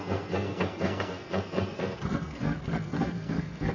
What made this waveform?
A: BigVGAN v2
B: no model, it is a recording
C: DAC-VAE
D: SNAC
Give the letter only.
D